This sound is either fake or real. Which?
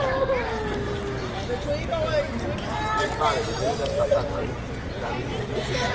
real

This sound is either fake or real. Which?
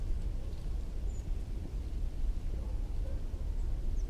real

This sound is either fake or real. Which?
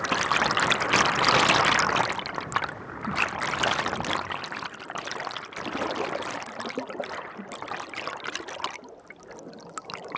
real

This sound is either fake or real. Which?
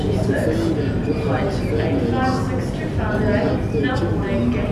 real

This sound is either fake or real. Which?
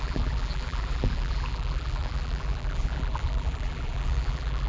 fake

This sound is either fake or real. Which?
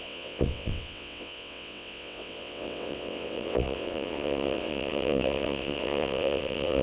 fake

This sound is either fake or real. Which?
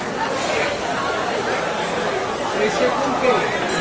real